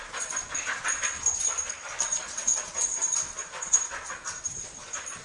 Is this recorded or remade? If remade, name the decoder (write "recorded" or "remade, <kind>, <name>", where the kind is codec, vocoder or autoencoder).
recorded